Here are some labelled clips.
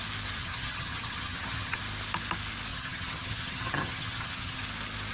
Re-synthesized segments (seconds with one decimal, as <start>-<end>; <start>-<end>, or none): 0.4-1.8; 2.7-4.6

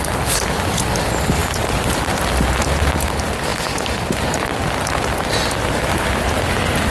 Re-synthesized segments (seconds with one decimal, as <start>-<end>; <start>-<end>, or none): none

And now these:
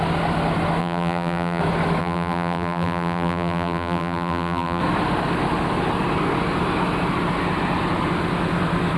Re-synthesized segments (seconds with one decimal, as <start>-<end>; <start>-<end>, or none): 0.8-1.6; 2.0-4.8

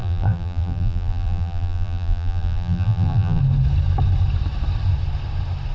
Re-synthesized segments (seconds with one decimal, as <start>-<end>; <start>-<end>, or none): 0.0-3.4

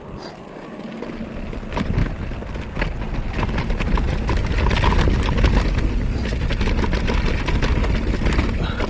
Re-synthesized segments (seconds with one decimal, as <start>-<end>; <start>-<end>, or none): none

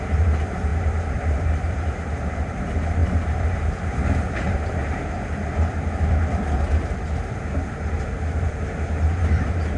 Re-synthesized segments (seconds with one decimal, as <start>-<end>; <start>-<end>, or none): 0.0-4.8; 7.5-9.8

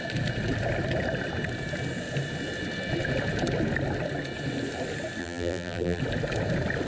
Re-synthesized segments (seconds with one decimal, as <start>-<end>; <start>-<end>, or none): 5.2-6.0

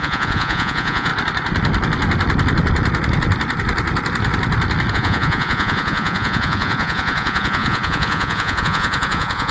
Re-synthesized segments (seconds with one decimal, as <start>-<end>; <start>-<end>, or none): 0.0-1.1; 4.9-9.5